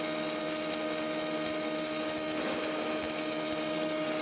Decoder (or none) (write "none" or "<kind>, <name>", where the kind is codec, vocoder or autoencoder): none